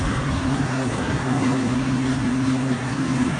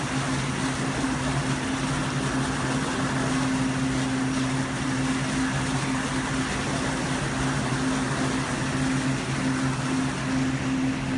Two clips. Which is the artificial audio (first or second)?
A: first